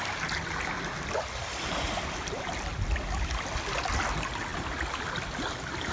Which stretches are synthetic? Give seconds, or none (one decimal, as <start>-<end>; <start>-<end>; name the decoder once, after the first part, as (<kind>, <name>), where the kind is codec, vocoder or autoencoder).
none